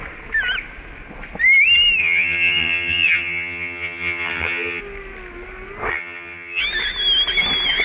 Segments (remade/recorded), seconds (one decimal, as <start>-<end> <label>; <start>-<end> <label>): 0.0-2.0 recorded; 2.0-4.8 remade; 4.8-5.9 recorded; 5.9-6.6 remade; 6.6-7.8 recorded